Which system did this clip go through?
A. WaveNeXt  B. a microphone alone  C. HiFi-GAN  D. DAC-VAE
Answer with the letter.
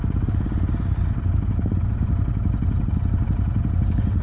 B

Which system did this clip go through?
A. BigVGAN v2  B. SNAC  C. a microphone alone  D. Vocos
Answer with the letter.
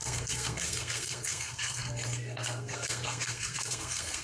B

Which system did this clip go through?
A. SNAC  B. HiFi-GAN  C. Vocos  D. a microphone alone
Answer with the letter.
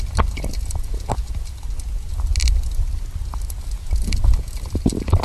D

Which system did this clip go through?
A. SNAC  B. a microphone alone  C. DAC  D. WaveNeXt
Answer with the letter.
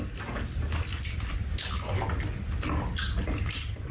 B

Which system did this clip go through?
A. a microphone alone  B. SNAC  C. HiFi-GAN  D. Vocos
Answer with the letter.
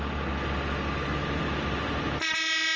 A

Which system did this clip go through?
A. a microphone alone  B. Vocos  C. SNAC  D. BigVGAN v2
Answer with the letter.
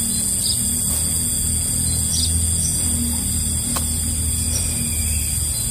A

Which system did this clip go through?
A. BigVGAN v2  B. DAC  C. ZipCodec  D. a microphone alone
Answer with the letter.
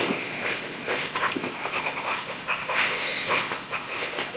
C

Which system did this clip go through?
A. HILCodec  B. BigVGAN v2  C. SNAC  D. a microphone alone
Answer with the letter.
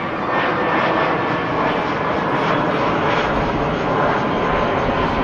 D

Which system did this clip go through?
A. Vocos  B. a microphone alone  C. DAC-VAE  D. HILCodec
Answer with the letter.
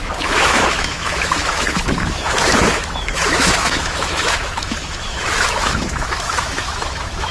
C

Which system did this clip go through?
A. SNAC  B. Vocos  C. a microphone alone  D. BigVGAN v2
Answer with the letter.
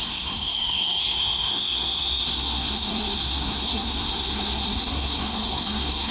A